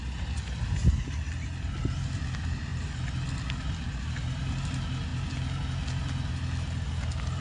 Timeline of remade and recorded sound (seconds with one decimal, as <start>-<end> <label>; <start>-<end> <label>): 0.0-7.4 recorded